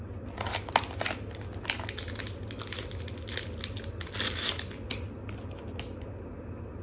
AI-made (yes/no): no